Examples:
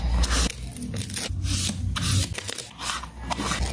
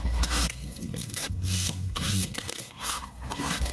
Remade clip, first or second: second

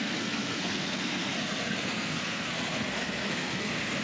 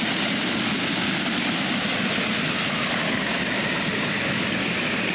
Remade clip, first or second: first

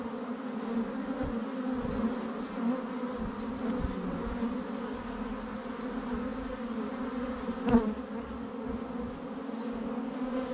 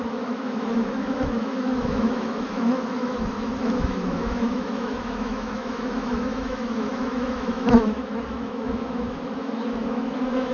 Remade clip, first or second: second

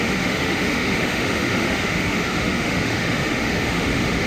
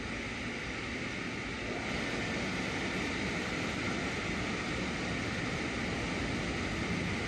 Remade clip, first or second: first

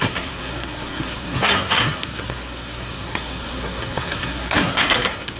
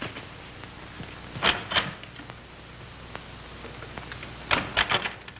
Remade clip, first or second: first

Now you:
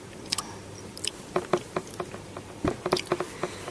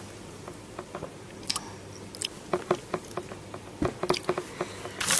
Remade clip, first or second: first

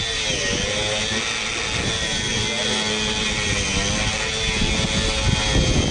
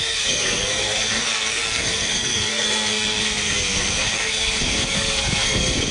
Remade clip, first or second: second